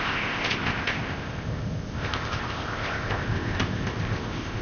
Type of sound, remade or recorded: remade